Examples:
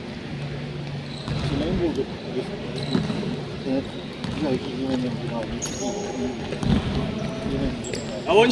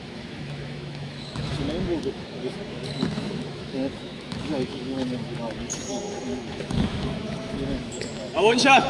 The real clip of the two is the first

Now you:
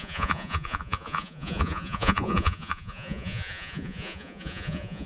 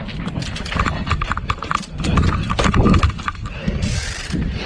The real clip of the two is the second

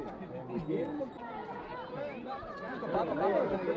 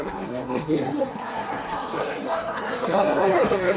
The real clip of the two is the first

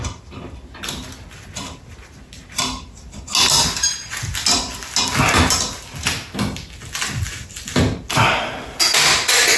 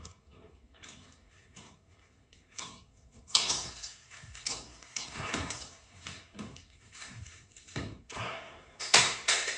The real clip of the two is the first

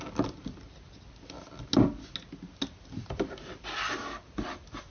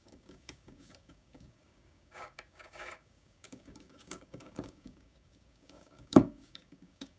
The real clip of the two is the first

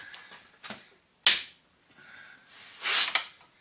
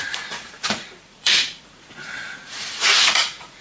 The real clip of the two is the first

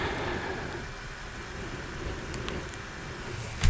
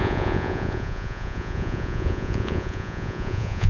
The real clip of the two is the first